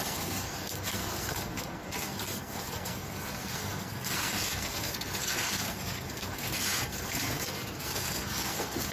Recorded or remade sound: remade